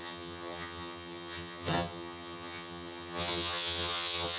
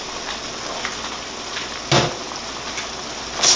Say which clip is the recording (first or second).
second